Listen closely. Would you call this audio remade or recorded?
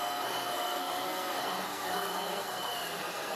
remade